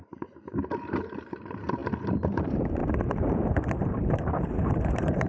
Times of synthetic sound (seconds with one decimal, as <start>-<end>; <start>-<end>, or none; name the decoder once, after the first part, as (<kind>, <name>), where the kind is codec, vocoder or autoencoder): 0.0-1.8 (vocoder, BigVGAN v2); 2.3-5.3